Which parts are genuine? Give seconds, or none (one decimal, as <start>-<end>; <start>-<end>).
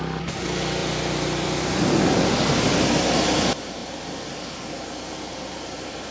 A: 0.0-0.8; 1.6-3.8